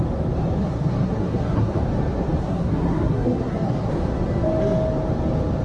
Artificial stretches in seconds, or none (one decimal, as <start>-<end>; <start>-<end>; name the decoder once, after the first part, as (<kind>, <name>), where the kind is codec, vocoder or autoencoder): 0.6-1.8 (codec, SNAC); 2.4-3.9

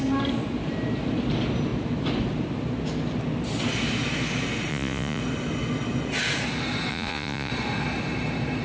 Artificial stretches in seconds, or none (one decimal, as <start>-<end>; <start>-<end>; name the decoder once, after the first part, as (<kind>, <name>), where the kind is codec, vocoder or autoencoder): 4.7-5.2 (vocoder, Vocos); 6.9-7.5